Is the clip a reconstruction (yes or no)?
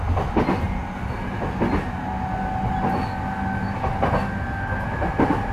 no